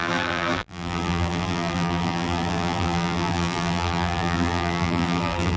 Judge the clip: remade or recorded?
remade